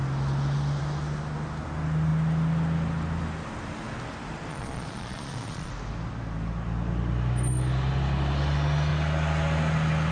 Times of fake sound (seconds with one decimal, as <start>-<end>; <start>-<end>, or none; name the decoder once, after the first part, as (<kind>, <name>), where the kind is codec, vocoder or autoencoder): 4.5-5.7 (vocoder, Vocos)